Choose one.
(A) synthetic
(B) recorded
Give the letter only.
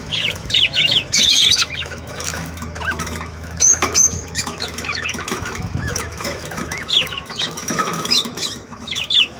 A